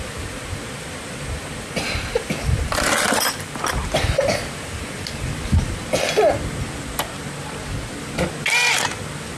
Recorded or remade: recorded